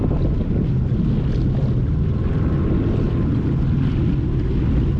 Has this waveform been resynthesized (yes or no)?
no